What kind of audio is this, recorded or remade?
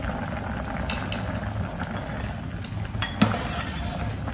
recorded